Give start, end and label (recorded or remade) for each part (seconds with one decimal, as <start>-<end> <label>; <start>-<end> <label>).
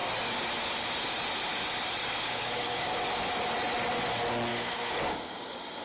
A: 0.0-2.0 recorded; 2.0-2.9 remade; 2.9-4.5 recorded; 4.5-5.8 remade